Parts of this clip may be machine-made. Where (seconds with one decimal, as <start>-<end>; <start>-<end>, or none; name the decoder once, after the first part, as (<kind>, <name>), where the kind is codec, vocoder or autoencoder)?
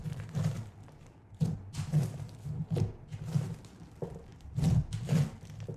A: none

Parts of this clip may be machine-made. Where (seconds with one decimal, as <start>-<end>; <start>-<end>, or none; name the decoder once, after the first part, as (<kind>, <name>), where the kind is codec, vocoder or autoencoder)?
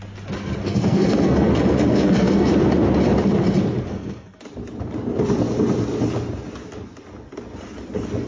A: 0.6-2.5 (codec, SNAC); 3.9-4.4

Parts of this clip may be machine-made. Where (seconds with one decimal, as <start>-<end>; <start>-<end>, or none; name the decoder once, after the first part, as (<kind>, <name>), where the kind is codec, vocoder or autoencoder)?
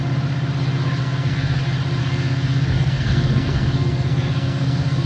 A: 1.0-1.6 (codec, SNAC); 2.0-5.1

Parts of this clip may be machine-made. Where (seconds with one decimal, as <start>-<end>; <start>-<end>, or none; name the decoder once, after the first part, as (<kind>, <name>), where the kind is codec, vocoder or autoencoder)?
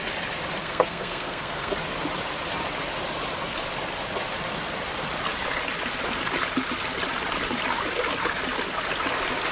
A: 0.6-1.7 (codec, SNAC)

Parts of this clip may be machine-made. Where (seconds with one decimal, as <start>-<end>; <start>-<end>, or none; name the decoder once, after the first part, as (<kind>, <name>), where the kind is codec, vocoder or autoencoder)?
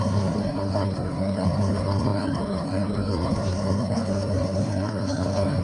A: 0.0-5.6 (codec, SNAC)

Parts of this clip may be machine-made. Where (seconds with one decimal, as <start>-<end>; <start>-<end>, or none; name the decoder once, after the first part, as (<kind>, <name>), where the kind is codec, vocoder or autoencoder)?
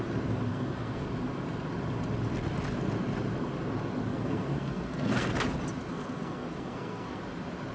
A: 0.5-1.1 (codec, SNAC); 4.1-5.3; 5.9-7.2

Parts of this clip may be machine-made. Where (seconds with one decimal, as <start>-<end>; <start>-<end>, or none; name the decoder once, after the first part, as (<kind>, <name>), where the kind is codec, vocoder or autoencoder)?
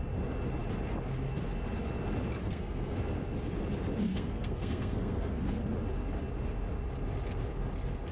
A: 2.4-3.0 (codec, SNAC); 4.1-5.5